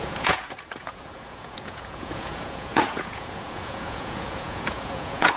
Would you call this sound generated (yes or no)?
yes